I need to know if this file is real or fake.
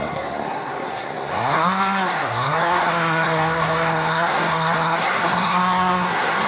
fake